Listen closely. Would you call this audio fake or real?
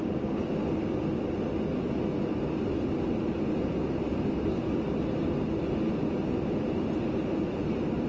real